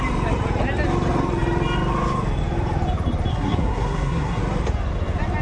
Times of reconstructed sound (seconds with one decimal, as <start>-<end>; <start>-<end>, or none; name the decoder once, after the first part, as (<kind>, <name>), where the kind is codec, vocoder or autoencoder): 3.3-4.4 (codec, SNAC)